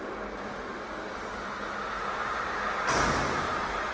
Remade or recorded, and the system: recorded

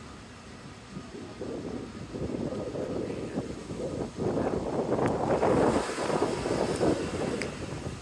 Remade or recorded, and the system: recorded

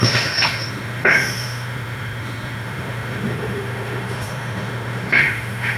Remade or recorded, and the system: remade, autoencoder, DAC-VAE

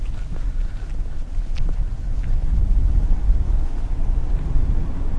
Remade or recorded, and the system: recorded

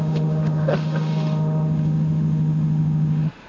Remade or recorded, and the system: remade, autoencoder, DAC-VAE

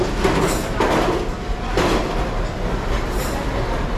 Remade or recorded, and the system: recorded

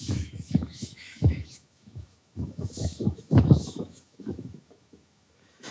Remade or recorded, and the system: remade, autoencoder, DAC-VAE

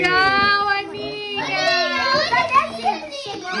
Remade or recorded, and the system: recorded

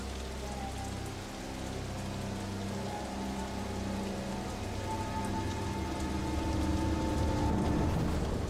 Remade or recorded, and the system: recorded